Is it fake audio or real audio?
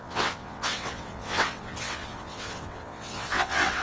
fake